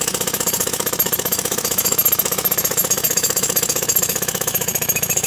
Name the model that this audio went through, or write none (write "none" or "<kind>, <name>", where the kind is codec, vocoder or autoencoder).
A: autoencoder, DAC-VAE